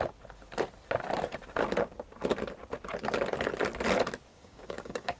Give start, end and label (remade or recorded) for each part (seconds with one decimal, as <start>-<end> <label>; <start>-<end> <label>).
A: 0.0-4.3 recorded; 4.3-5.2 remade